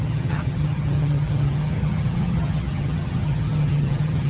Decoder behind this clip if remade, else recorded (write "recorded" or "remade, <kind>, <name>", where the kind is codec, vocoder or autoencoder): remade, vocoder, HiFi-GAN